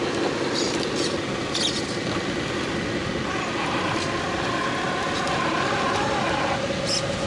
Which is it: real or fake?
real